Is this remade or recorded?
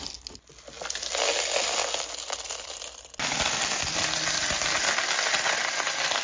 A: recorded